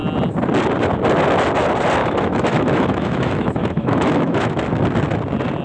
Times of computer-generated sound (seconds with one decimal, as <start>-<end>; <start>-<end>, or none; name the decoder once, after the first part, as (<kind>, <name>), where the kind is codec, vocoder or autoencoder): 2.0-4.6 (autoencoder, DAC-VAE)